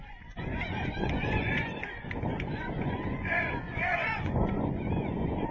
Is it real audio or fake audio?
fake